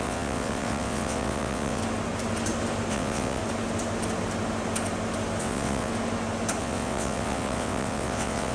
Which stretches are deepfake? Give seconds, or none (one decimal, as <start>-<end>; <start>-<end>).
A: 0.0-1.8; 2.9-3.4; 5.4-5.9; 6.6-8.5

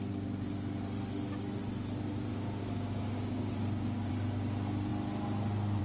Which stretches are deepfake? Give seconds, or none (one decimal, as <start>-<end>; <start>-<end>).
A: 2.3-4.1

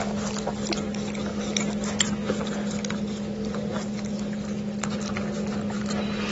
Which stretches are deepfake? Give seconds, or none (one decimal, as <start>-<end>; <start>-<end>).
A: none

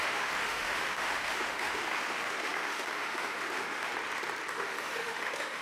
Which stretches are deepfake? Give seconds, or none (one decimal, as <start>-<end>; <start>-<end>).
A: 0.0-3.9; 4.5-5.6

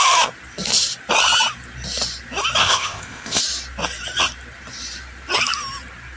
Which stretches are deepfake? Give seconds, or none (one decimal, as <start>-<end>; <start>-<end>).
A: 2.6-3.4

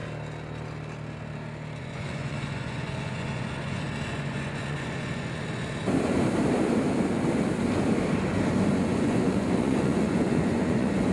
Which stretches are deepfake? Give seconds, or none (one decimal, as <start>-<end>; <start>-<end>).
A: 1.8-5.8; 8.7-11.1

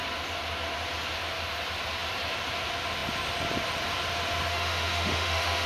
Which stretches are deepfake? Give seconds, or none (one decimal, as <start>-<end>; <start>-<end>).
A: 4.5-5.7

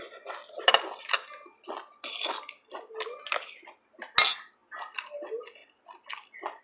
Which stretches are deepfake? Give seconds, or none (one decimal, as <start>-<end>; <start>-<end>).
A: none